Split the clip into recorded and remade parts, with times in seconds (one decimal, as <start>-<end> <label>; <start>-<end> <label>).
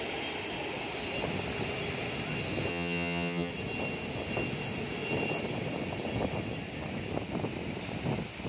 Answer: 0.0-2.7 recorded; 2.7-3.5 remade; 3.5-8.5 recorded